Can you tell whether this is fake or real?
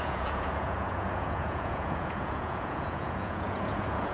fake